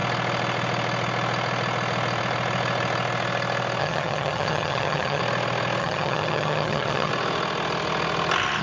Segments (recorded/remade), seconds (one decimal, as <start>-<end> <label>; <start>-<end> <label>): 0.0-3.8 recorded; 3.8-5.2 remade; 5.2-5.8 recorded; 5.8-7.1 remade; 7.1-8.6 recorded